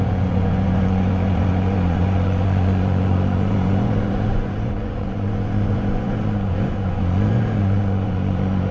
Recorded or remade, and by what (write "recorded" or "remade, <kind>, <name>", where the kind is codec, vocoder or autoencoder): remade, vocoder, Vocos